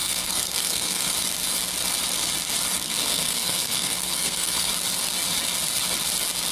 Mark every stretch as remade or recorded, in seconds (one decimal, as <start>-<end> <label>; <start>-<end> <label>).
0.0-1.1 remade; 1.1-3.0 recorded; 3.0-4.7 remade; 4.7-6.5 recorded